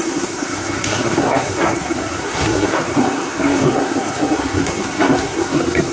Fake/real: fake